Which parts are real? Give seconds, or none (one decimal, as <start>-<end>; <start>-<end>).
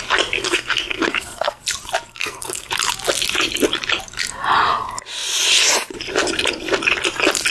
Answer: 0.0-0.4; 1.6-2.1; 2.7-7.5